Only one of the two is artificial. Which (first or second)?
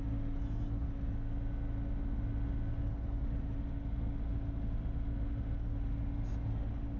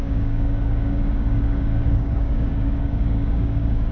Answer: second